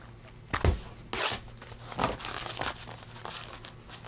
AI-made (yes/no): no